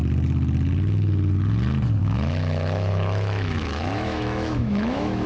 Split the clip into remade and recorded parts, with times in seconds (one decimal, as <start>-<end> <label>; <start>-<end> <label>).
0.0-2.0 recorded; 2.0-5.3 remade